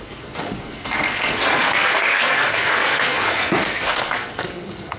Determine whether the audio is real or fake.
fake